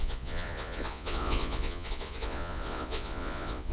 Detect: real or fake fake